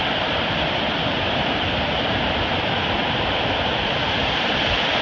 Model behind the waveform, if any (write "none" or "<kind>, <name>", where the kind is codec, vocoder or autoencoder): none